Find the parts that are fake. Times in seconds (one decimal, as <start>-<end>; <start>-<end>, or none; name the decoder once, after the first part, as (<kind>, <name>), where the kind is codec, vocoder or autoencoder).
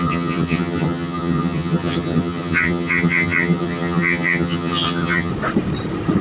0.0-5.3 (vocoder, HiFi-GAN)